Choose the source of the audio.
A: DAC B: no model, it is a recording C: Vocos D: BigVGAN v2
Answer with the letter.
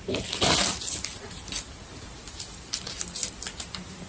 B